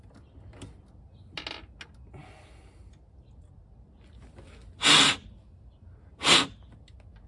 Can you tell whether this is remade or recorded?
recorded